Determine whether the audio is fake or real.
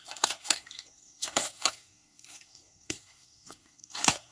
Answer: fake